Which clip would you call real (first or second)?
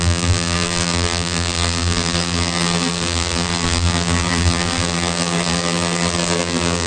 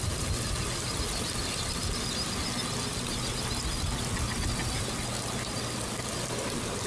second